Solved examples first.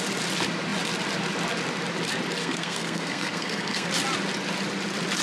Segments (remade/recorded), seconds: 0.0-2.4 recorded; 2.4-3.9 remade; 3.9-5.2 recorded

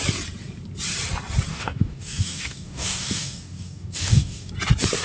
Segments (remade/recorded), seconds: 0.0-1.5 recorded; 1.5-4.5 remade; 4.5-5.0 recorded

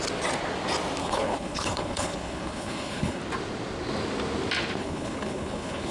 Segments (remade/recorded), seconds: 0.0-1.0 recorded; 1.0-3.2 remade; 3.2-4.8 recorded; 4.8-5.9 remade

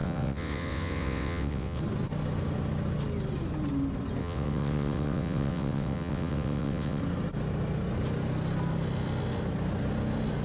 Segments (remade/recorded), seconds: 0.0-1.8 remade; 1.8-4.2 recorded; 4.2-7.0 remade; 7.0-10.4 recorded

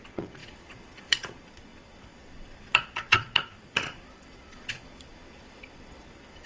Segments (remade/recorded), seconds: 0.0-6.5 remade

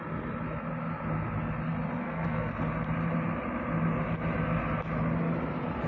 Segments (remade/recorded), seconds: 0.0-2.0 recorded; 2.0-2.5 remade; 2.5-5.9 recorded

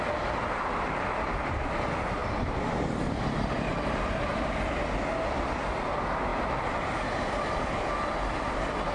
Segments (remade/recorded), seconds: 0.0-8.9 recorded

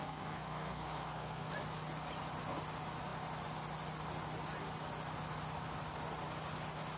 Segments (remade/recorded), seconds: 0.0-1.5 remade; 1.5-7.0 recorded